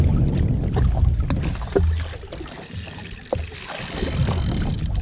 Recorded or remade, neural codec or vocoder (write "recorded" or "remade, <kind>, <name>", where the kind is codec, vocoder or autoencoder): recorded